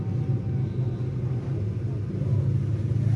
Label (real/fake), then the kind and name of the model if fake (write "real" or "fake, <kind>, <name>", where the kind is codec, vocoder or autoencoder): real